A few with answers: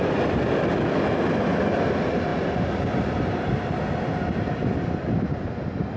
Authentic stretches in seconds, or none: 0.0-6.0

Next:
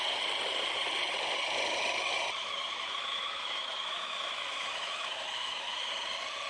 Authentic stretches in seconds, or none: 0.0-2.4; 5.9-6.5